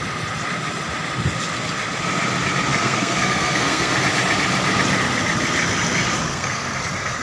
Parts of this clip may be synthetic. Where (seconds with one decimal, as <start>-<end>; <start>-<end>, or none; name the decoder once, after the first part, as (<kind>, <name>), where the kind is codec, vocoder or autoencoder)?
2.7-3.9 (codec, SNAC); 6.3-6.8